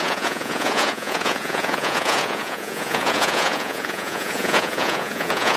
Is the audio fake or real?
fake